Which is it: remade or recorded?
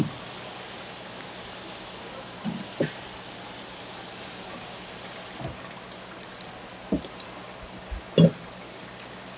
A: recorded